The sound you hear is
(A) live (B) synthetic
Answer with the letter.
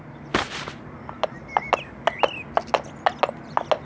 A